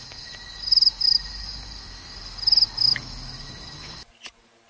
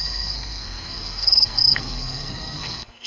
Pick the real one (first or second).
first